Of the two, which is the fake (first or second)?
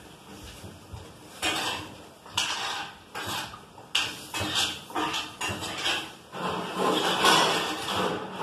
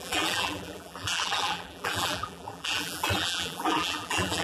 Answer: second